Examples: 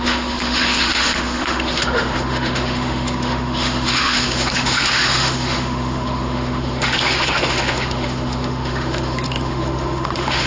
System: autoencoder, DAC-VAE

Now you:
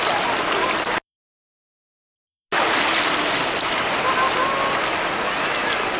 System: none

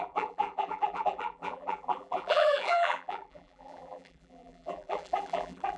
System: vocoder, BigVGAN v2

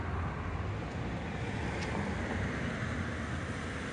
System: none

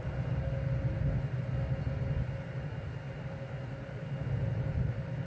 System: none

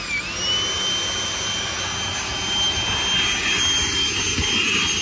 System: none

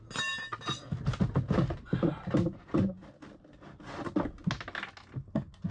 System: none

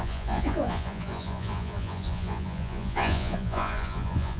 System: vocoder, Vocos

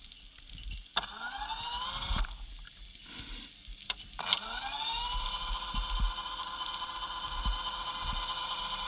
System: none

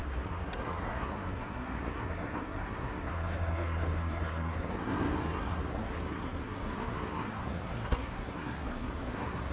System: codec, SNAC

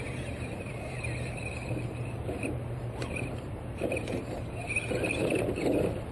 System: vocoder, BigVGAN v2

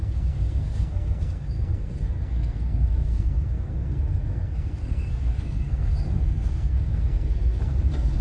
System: codec, SNAC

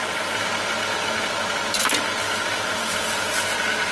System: none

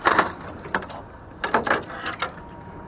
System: none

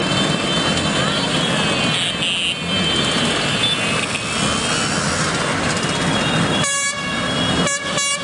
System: none